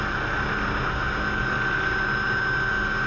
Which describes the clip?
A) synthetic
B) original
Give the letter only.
B